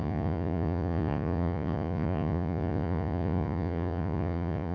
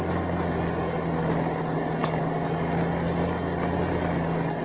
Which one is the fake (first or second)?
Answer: first